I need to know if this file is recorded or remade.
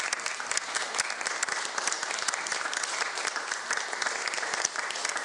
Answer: recorded